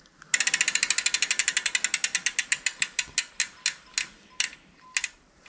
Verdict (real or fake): real